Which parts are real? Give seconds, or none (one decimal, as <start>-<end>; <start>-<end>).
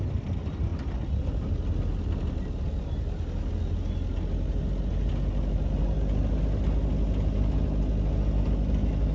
0.0-9.1